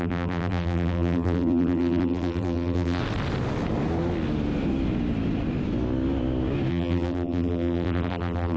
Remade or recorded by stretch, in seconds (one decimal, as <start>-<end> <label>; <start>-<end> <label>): 0.0-3.0 remade; 3.0-6.7 recorded; 6.7-8.6 remade